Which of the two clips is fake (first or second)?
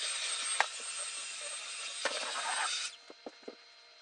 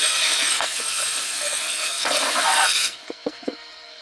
second